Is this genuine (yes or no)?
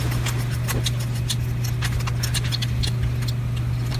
yes